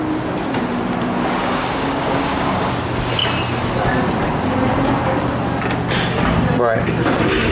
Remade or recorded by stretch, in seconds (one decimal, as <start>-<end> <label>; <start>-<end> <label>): 0.0-1.4 recorded; 1.4-2.7 remade; 2.7-7.5 recorded